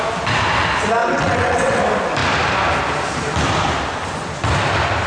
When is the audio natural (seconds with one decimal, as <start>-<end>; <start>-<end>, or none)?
0.0-1.0; 1.8-5.1